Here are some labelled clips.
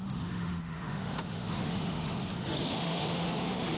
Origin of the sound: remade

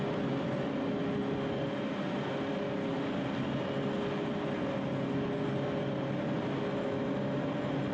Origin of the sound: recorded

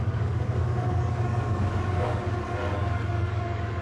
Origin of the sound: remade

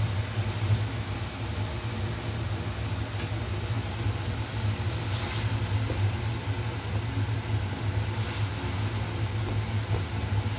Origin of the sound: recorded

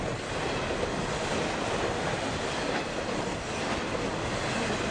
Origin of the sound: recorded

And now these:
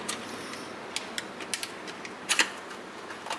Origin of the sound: recorded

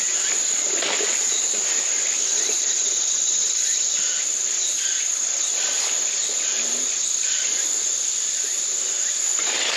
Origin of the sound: recorded